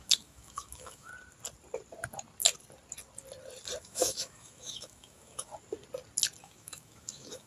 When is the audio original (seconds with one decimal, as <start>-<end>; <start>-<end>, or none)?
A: 1.1-3.8; 5.5-6.4